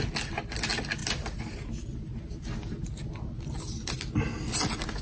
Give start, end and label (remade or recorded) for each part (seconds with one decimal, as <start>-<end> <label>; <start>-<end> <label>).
0.0-5.0 recorded